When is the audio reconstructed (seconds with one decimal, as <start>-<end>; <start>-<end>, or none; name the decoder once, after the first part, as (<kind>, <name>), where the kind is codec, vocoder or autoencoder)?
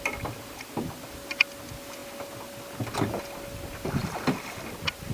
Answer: none